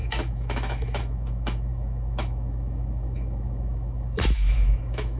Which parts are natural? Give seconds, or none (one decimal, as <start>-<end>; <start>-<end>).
none